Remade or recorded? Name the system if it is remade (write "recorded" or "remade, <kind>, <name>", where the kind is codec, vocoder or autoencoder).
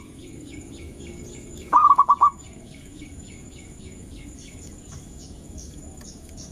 remade, codec, DAC